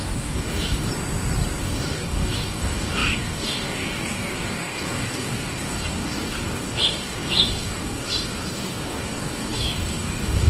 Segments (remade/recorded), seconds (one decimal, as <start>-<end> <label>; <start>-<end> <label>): 0.0-0.9 remade; 0.9-1.6 recorded; 1.6-10.5 remade